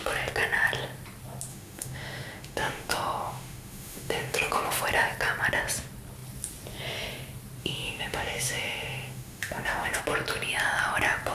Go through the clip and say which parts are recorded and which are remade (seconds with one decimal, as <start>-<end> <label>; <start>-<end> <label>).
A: 0.0-1.5 recorded; 1.5-4.7 remade; 4.7-7.6 recorded; 7.6-10.0 remade; 10.0-11.3 recorded